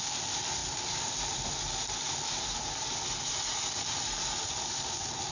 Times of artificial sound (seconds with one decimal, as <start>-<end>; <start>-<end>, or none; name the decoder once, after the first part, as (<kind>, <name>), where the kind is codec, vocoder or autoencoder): none